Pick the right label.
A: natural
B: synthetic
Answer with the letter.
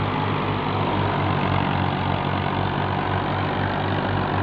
A